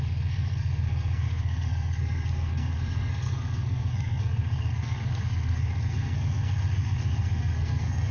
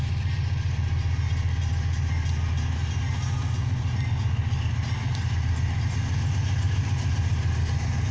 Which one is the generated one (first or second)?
first